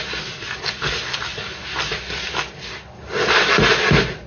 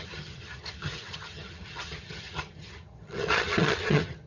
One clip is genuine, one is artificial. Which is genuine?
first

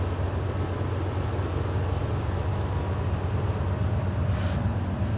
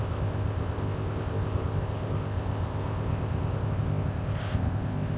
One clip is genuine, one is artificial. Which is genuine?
first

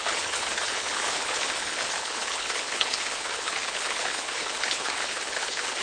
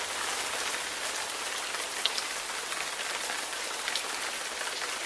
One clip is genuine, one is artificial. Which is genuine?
second